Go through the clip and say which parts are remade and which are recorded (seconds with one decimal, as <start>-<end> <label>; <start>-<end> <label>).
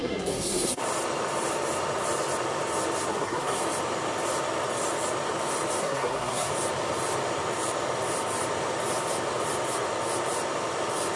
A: 0.0-0.8 remade; 0.8-3.1 recorded; 3.1-3.6 remade; 3.6-5.8 recorded; 5.8-6.5 remade; 6.5-11.2 recorded